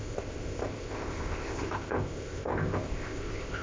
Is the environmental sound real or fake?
fake